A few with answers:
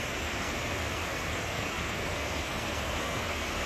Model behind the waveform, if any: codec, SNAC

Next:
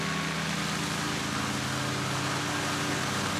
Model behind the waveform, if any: none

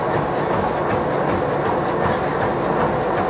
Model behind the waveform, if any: none